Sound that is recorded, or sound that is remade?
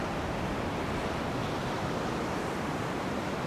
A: recorded